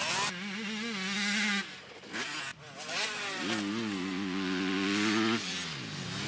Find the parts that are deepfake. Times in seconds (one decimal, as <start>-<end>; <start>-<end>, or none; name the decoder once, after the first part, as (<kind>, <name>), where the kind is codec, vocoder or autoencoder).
none